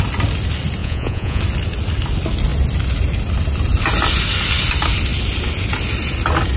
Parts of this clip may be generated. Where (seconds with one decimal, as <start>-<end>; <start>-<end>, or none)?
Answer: 0.8-1.4